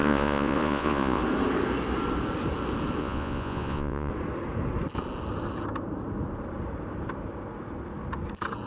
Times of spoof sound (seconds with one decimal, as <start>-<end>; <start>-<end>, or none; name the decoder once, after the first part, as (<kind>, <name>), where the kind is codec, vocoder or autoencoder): 0.0-1.2 (vocoder, Vocos); 3.0-4.1